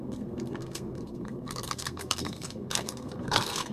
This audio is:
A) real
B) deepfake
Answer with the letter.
B